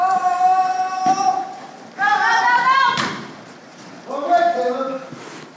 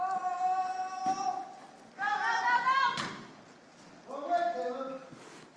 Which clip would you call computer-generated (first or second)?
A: first